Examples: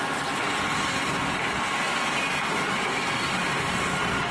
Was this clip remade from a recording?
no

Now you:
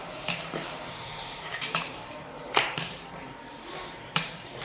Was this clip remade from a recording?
yes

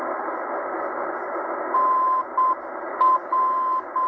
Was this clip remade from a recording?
no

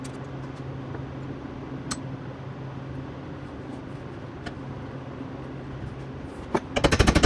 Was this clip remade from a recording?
no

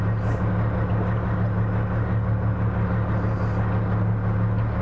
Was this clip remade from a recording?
no